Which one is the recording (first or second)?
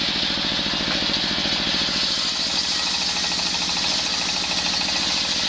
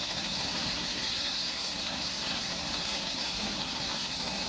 first